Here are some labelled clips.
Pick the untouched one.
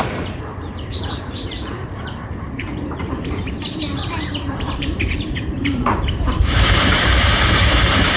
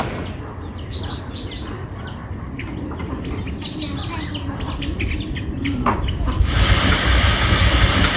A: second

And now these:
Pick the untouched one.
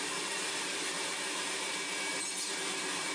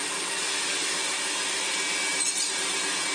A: second